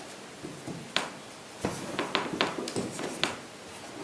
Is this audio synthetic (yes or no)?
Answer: no